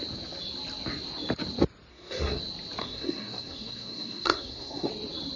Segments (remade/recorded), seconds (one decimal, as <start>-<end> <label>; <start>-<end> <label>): 0.0-1.9 recorded; 1.9-2.4 remade; 2.4-2.8 recorded; 2.8-4.9 remade; 4.9-5.4 recorded